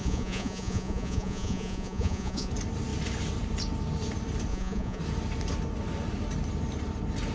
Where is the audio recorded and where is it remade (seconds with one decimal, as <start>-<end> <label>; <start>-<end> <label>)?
0.0-2.5 remade; 2.5-4.5 recorded; 4.5-5.0 remade; 5.0-7.3 recorded